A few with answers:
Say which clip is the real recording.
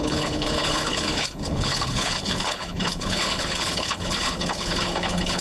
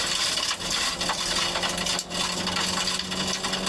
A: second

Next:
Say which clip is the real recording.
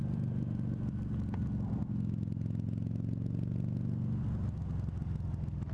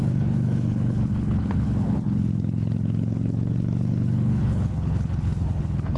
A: first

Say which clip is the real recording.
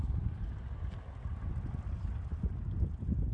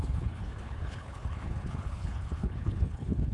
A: first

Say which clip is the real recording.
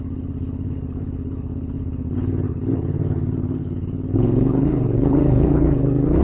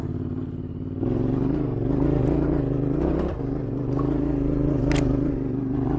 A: second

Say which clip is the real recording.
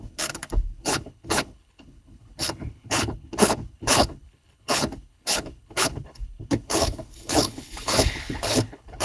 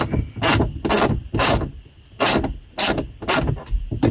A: second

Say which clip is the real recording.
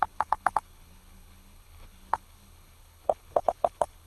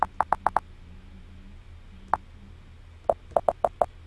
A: second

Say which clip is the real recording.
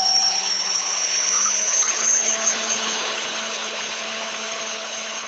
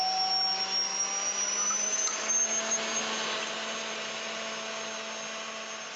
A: second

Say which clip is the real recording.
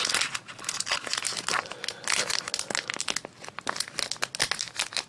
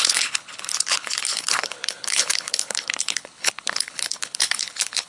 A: first